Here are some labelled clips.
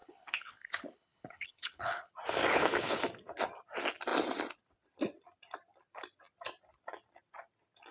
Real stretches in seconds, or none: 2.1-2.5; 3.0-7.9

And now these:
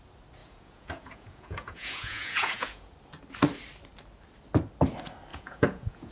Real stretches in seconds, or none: 0.0-0.4; 2.9-5.3